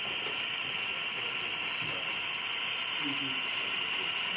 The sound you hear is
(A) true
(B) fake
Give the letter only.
A